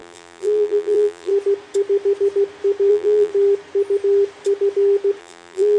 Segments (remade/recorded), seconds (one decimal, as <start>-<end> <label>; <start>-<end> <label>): 0.0-1.3 remade; 1.3-2.9 recorded; 2.9-3.3 remade; 3.3-5.2 recorded; 5.2-5.8 remade